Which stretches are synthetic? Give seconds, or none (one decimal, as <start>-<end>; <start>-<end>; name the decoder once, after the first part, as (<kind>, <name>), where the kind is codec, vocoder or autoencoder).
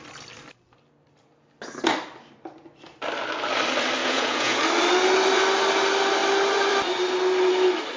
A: 4.0-4.6 (vocoder, Vocos)